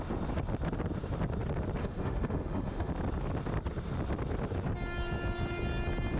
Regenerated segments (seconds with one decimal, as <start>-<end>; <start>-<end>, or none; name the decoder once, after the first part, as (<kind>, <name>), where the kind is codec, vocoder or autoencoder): 1.8-2.9 (autoencoder, DAC-VAE)